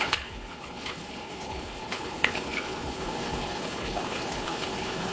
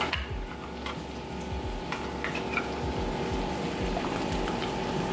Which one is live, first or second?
second